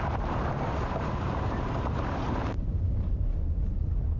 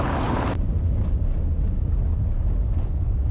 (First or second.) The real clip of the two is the second